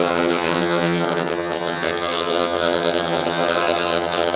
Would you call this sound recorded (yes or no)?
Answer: no